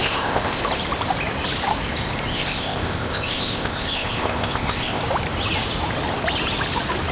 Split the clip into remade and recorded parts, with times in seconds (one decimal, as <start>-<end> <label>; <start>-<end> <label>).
0.0-0.6 remade; 0.6-2.3 recorded; 2.3-5.0 remade; 5.0-7.1 recorded

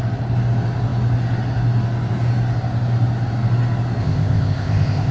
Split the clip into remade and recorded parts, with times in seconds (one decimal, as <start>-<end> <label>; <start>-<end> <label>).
0.0-4.0 recorded; 4.0-5.1 remade